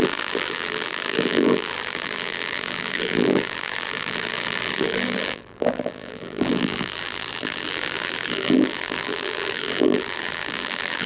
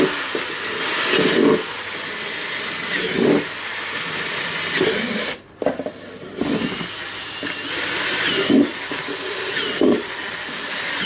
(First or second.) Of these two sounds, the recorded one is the second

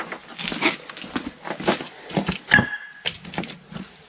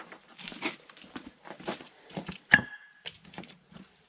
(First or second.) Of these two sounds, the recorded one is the first